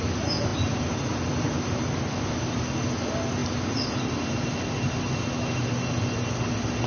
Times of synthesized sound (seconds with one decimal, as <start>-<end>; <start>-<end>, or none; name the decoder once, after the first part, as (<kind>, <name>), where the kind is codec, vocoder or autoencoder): none